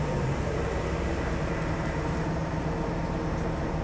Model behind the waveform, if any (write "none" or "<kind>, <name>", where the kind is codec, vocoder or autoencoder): vocoder, BigVGAN v2